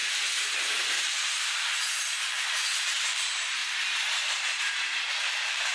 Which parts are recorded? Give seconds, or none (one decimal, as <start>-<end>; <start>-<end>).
3.6-5.1